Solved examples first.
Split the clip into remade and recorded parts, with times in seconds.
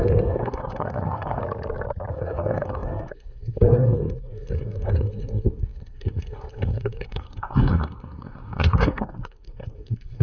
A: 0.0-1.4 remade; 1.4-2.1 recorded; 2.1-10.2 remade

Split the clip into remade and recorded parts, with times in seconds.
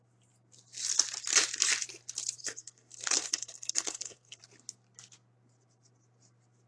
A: 0.0-2.4 recorded; 2.4-4.4 remade; 4.4-6.7 recorded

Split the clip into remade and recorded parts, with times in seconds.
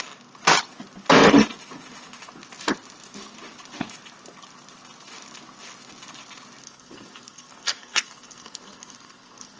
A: 0.0-6.6 recorded; 6.6-9.6 remade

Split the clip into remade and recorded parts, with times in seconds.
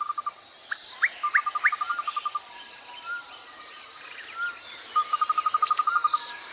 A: 0.0-6.5 recorded